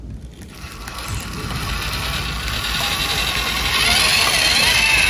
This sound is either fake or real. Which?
real